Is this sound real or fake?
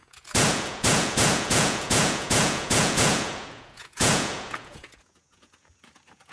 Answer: fake